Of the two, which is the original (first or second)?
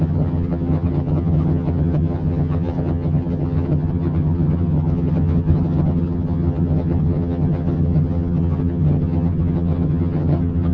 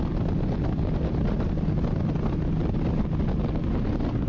second